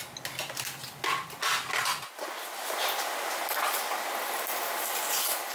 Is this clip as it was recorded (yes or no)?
yes